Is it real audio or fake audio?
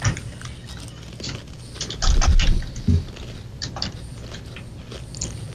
real